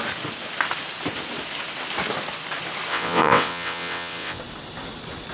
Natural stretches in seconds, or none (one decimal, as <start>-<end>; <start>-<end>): 0.0-2.9; 4.4-5.3